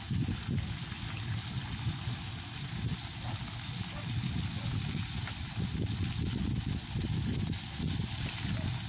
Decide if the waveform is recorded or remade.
recorded